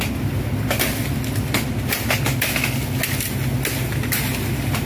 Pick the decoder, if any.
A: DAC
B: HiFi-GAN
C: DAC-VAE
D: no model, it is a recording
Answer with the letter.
D